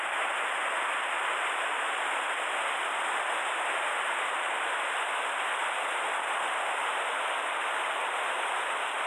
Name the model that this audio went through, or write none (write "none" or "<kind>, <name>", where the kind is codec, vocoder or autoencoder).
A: none